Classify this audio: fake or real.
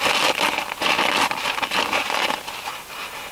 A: real